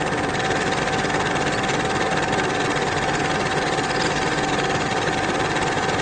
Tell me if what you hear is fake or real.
real